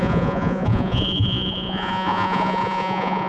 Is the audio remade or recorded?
remade